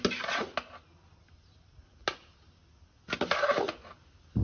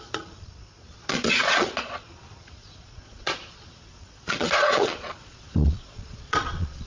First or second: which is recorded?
first